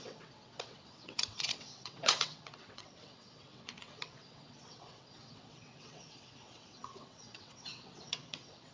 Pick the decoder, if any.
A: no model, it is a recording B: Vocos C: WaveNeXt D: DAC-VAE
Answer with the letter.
C